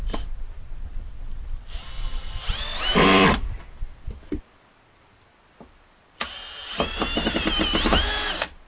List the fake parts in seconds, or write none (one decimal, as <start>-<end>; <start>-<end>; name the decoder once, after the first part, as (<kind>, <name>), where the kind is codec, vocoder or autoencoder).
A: 0.9-4.4 (vocoder, BigVGAN v2)